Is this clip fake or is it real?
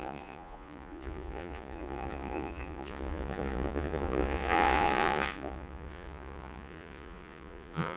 fake